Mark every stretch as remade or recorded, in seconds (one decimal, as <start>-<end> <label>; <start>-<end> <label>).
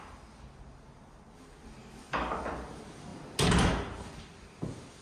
0.0-1.8 recorded; 1.8-2.4 remade; 2.4-5.0 recorded